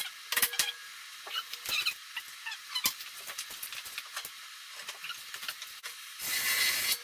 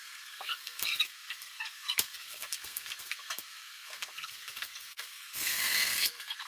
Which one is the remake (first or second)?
second